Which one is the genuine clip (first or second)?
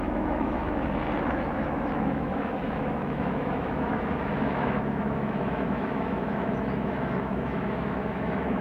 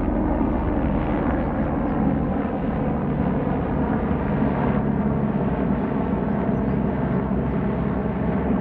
second